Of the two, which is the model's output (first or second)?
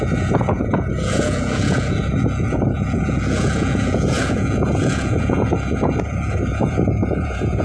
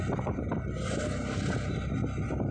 first